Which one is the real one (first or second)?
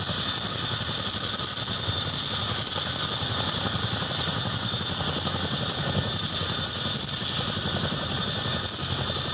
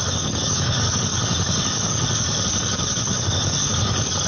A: first